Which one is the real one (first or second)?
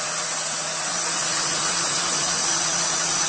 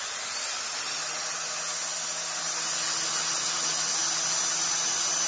second